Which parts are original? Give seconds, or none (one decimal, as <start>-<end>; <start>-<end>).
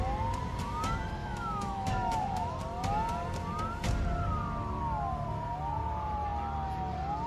0.0-1.2; 2.6-7.3